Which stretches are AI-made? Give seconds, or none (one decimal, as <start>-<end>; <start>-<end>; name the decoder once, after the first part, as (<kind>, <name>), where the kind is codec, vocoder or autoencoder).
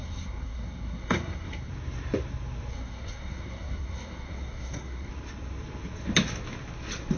0.0-1.7 (codec, SNAC); 2.7-5.1